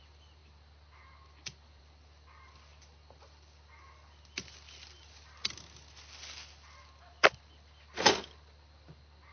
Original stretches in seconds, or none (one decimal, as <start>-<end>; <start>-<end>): 0.0-9.3